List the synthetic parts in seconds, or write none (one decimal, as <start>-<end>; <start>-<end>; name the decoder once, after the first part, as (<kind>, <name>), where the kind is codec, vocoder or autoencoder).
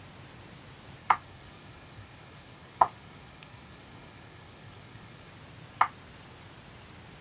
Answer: 1.0-5.3 (codec, DAC)